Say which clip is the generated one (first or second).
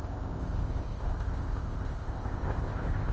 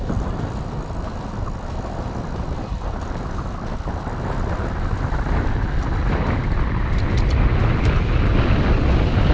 first